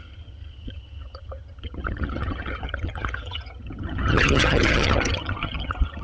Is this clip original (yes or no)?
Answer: no